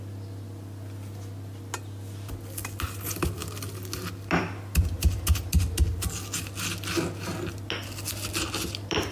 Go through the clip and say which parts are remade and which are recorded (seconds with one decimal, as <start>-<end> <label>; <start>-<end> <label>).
0.0-9.1 recorded